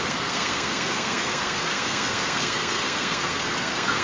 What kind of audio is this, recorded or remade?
remade